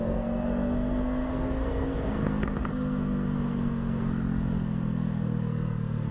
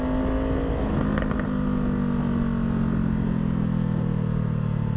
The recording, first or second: second